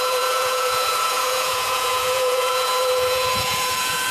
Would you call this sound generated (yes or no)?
yes